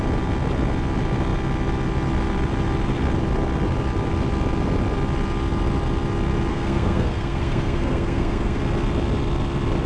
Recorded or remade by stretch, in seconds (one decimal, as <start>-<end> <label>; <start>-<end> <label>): 0.0-6.5 recorded; 6.5-8.6 remade; 8.6-9.9 recorded